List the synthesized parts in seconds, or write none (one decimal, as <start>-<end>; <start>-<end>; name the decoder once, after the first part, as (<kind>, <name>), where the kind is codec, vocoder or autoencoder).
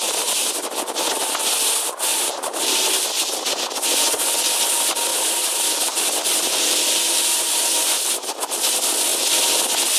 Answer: 2.1-2.8 (vocoder, BigVGAN v2); 5.1-8.1